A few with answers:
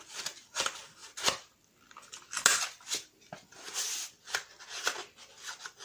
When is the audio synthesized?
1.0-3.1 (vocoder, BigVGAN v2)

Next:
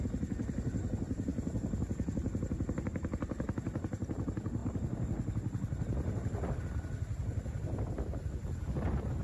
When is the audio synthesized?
none

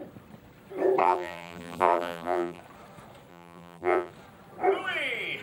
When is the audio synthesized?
1.0-2.6 (vocoder, BigVGAN v2); 3.3-4.1

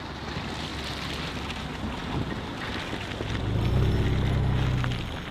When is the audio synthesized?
none

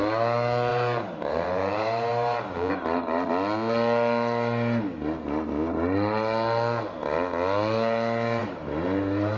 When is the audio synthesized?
0.7-3.3 (vocoder, BigVGAN v2); 8.4-9.4

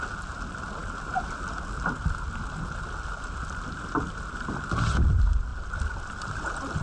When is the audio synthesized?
none

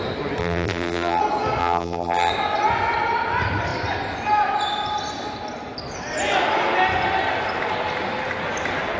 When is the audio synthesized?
0.4-1.2 (vocoder, BigVGAN v2); 1.6-2.3